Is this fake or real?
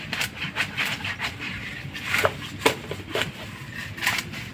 real